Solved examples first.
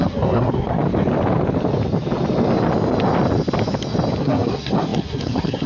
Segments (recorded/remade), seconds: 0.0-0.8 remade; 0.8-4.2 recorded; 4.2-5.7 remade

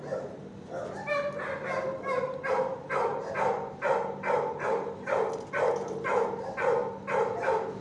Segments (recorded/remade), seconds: 0.0-7.8 recorded

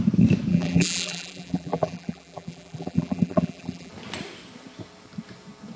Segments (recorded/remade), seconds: 0.0-0.5 recorded; 0.5-3.9 remade; 3.9-5.8 recorded

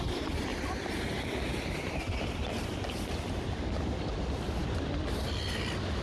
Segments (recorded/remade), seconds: 0.0-6.0 recorded

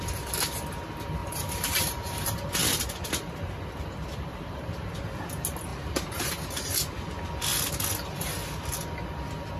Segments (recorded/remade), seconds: 0.0-1.2 recorded; 1.2-2.6 remade; 2.6-4.3 recorded; 4.3-5.2 remade; 5.2-5.7 recorded; 5.7-6.3 remade; 6.3-9.6 recorded

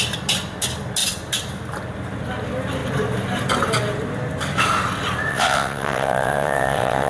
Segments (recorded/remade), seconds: 0.0-5.3 recorded; 5.3-7.1 remade

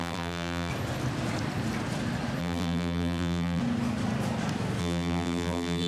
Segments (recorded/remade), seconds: 0.0-0.7 remade; 0.7-2.4 recorded; 2.4-3.6 remade; 3.6-4.8 recorded; 4.8-5.9 remade